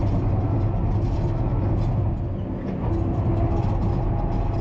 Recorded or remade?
recorded